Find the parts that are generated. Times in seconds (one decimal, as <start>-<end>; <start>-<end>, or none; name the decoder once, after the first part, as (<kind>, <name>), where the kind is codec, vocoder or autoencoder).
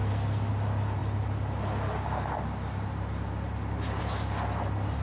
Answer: 0.0-0.5 (codec, SNAC)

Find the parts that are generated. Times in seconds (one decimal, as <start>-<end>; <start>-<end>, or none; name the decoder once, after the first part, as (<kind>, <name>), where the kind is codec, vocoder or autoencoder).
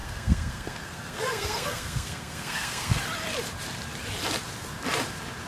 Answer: 0.0-3.0 (codec, SNAC)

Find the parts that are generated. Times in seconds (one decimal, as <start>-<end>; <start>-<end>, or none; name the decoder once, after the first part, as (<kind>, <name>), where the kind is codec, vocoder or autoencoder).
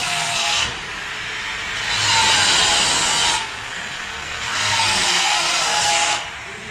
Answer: 0.0-0.7 (codec, SNAC); 3.3-6.2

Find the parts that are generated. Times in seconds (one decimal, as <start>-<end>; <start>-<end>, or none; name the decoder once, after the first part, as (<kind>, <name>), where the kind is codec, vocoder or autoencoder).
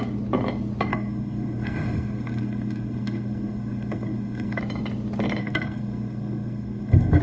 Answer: 0.9-4.6 (codec, SNAC); 5.4-7.2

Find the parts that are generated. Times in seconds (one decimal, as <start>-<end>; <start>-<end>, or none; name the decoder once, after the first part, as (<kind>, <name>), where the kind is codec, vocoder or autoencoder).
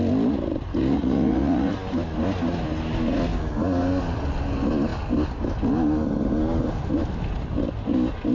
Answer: 0.8-1.7 (vocoder, Vocos)